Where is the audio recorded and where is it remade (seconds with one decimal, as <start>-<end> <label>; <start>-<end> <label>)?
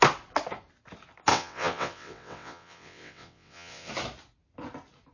0.0-1.3 recorded; 1.3-3.9 remade; 3.9-5.1 recorded